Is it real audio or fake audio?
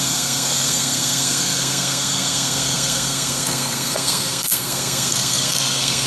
fake